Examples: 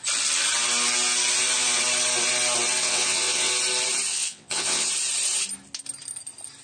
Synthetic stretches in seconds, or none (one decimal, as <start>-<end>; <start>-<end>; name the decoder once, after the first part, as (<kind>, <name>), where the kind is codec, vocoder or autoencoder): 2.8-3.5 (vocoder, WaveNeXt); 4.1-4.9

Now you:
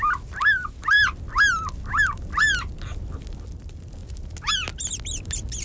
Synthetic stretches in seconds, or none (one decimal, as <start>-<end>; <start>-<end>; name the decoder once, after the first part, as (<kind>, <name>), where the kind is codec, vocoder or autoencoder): none

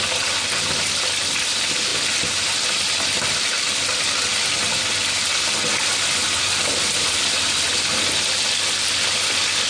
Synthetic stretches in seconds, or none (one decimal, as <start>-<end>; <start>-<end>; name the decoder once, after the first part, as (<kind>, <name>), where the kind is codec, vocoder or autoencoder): none

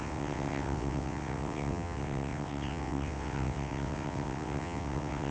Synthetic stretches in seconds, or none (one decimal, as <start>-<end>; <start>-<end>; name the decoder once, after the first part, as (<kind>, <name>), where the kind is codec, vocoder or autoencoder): 0.0-5.3 (vocoder, WaveNeXt)

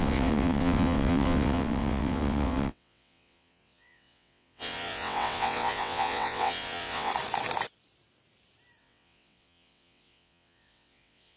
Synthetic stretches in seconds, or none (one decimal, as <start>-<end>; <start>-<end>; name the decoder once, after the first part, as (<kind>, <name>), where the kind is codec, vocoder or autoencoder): 0.0-7.1 (vocoder, WaveNeXt); 8.8-11.4

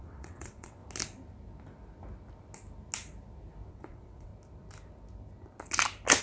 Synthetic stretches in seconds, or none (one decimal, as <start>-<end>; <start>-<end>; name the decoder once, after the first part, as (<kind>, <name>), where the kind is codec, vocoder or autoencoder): 0.0-0.8 (vocoder, WaveNeXt); 3.7-4.3

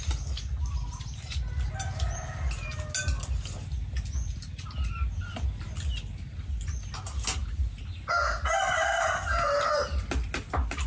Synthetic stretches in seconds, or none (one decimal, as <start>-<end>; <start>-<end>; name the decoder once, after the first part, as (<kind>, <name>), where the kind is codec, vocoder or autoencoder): none